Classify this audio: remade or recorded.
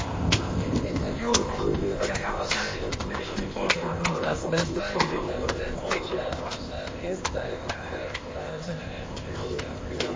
remade